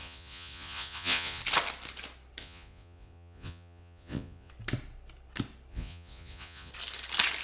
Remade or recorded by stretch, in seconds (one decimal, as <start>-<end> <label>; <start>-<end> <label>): 0.0-1.4 remade; 1.4-2.4 recorded; 2.4-4.5 remade; 4.5-5.7 recorded; 5.7-6.7 remade; 6.7-7.4 recorded